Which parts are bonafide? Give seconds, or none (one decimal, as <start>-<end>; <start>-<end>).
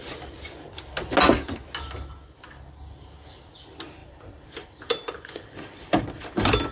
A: 0.0-4.0